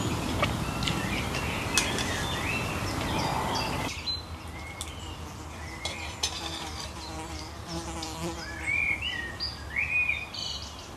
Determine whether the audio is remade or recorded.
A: recorded